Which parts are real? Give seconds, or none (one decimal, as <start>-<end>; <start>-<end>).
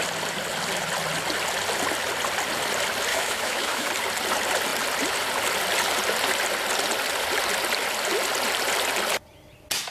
0.0-3.1; 3.9-9.9